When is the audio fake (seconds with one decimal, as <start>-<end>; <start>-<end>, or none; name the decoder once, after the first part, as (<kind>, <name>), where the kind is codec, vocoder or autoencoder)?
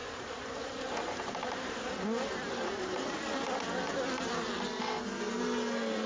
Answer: 0.0-1.9 (vocoder, BigVGAN v2)